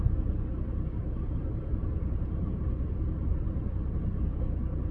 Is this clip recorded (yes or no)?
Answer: yes